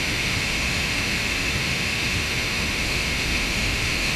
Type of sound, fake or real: fake